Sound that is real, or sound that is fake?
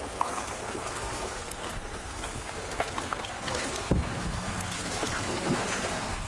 fake